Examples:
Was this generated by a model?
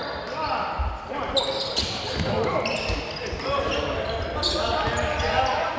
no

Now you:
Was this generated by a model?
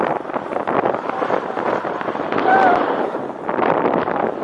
yes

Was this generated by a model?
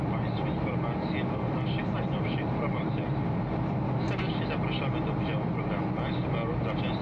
no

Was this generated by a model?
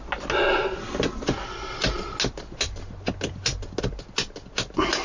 no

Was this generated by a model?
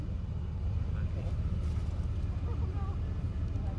no